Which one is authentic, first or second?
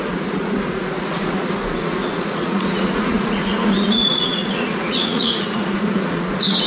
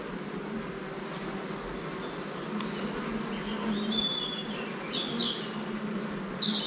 second